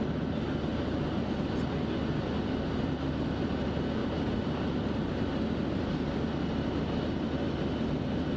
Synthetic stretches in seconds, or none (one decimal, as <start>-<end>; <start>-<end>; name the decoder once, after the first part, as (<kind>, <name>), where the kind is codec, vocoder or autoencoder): 4.0-5.4 (vocoder, BigVGAN v2)